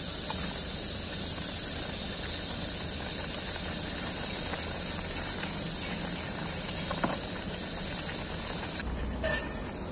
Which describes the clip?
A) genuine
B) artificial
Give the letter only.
A